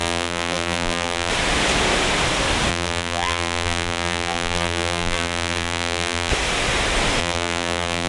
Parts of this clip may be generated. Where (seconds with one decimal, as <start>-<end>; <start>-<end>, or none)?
0.0-1.3; 2.7-6.3; 7.2-8.1